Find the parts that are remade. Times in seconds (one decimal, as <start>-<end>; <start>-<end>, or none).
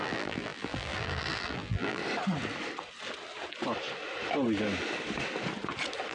0.0-2.0